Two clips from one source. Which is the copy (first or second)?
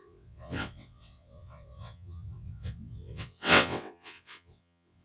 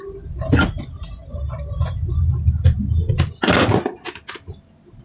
first